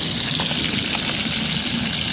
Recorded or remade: recorded